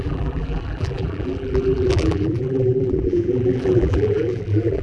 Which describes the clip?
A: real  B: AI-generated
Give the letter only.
B